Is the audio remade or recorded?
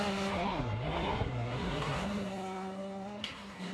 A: remade